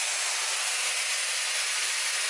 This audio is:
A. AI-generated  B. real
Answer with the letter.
B